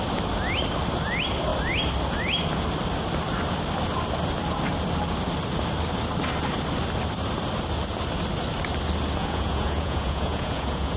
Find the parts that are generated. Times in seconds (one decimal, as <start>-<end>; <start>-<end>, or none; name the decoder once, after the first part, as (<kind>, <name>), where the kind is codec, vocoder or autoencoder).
9.2-11.0 (vocoder, Vocos)